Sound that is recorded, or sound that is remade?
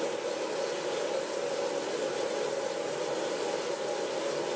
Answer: recorded